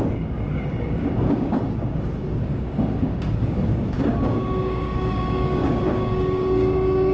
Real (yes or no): no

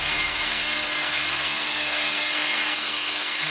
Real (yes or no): no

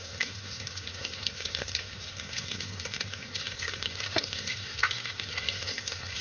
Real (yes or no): no